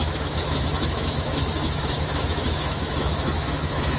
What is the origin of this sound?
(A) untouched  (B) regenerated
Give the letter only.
B